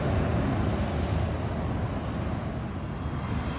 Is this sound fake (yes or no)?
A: no